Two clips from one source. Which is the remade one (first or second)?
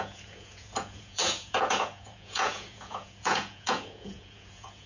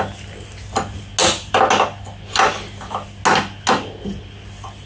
first